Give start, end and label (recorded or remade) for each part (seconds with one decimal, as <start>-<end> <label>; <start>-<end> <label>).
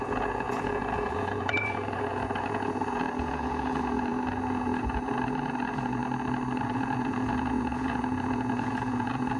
0.0-6.0 remade; 6.0-6.6 recorded; 6.6-9.4 remade